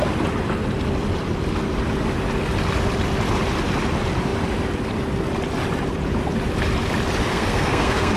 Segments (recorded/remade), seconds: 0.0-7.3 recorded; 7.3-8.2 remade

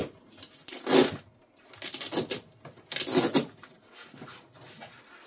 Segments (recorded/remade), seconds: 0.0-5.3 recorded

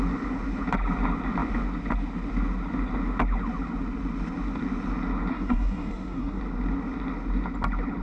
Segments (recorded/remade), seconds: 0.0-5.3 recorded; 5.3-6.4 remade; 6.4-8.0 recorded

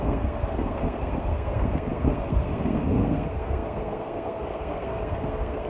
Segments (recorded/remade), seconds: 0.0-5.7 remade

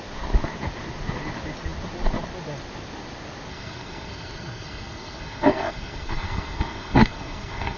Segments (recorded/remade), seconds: 0.0-3.5 recorded; 3.5-7.8 remade